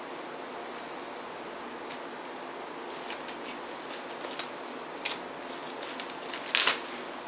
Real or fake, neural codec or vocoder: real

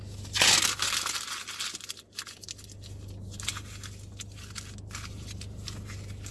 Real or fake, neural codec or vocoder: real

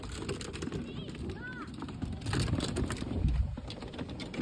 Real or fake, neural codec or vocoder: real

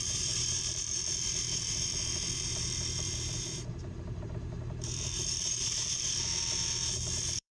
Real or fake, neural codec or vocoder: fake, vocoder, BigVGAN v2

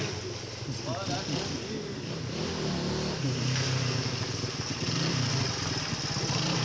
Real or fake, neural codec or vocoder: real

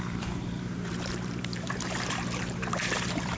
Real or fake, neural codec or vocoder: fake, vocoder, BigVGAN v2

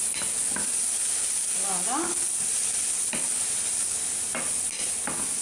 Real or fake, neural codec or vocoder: real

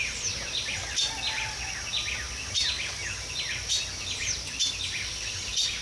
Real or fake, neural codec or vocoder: real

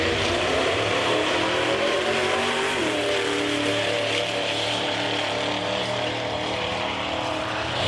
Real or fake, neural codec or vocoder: fake, vocoder, BigVGAN v2